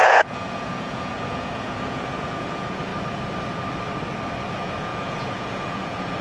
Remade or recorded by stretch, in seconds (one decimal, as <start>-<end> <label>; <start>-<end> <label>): 0.0-2.9 remade; 2.9-4.5 recorded; 4.5-6.2 remade